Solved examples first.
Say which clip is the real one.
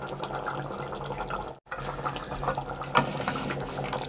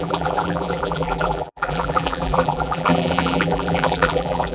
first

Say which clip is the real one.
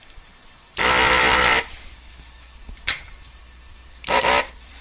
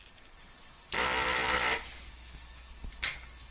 second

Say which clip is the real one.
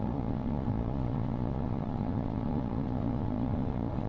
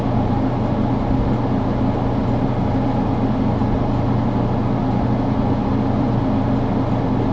second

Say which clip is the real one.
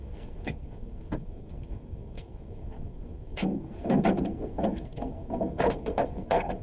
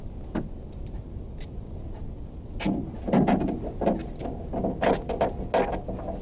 second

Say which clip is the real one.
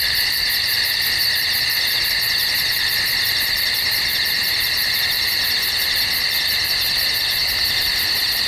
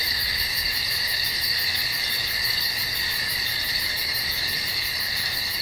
first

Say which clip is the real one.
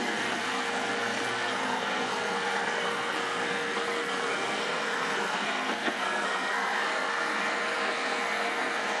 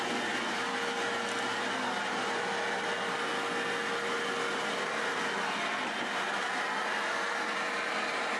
second